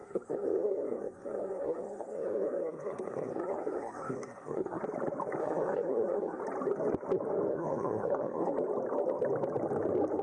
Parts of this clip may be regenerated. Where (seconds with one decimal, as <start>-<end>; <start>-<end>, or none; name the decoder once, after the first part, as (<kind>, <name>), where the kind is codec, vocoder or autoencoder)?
0.0-4.8 (codec, SNAC); 5.4-6.4; 7.5-8.5

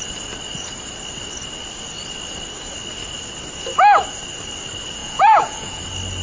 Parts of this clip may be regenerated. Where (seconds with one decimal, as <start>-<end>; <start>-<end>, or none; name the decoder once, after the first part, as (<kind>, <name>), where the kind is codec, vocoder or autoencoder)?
5.0-5.8 (vocoder, Vocos)

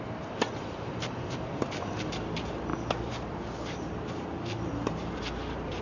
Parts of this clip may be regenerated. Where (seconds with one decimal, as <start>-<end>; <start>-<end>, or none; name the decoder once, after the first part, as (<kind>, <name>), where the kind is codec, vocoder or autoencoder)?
0.0-5.8 (vocoder, BigVGAN v2)

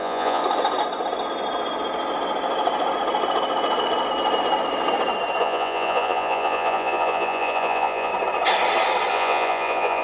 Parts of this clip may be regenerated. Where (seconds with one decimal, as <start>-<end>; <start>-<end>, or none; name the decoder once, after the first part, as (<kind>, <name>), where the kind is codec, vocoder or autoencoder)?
0.0-0.4 (vocoder, Vocos); 5.4-8.1; 9.1-10.0

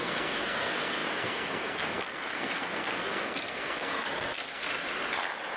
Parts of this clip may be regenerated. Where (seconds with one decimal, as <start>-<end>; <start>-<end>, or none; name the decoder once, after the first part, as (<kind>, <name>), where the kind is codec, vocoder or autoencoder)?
0.0-4.6 (codec, SNAC)

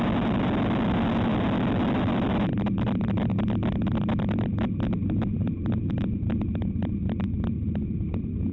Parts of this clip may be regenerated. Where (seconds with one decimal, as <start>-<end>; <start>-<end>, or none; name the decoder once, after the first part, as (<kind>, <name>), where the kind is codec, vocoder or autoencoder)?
none

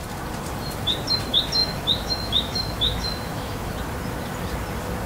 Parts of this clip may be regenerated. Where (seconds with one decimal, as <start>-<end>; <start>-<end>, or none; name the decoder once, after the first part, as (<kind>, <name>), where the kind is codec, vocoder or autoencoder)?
1.6-3.7 (autoencoder, DAC-VAE)

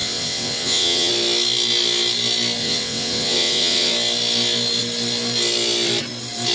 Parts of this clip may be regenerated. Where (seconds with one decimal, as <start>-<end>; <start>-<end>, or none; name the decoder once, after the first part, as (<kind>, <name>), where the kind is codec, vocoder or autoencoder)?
0.0-1.1 (vocoder, WaveNeXt); 2.6-3.9